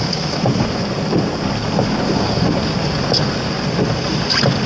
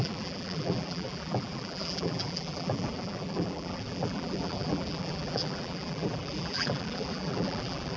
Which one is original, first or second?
first